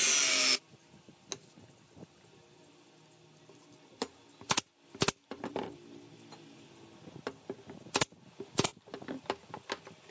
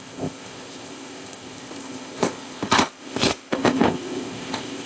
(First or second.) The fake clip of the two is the second